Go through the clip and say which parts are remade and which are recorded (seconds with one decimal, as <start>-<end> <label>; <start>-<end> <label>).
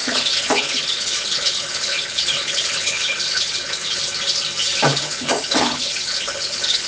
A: 0.0-4.0 remade; 4.0-4.9 recorded; 4.9-6.9 remade